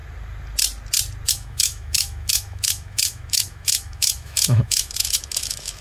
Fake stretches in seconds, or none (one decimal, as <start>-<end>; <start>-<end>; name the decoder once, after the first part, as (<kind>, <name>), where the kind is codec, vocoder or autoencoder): 1.3-5.8 (autoencoder, DAC-VAE)